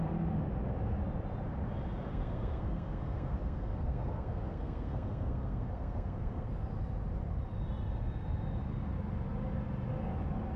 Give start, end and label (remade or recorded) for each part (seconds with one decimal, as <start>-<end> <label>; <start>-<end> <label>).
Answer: 0.0-2.1 recorded; 2.1-6.5 remade; 6.5-10.6 recorded